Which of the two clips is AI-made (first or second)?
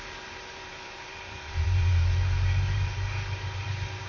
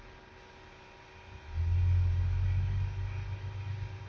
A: first